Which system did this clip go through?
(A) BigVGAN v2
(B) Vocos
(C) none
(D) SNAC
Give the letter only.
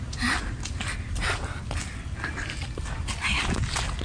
C